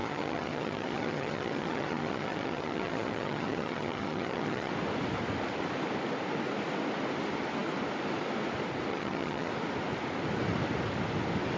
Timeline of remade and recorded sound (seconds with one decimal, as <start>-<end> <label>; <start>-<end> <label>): 0.0-4.7 remade; 4.7-8.9 recorded; 8.9-9.5 remade; 9.5-11.6 recorded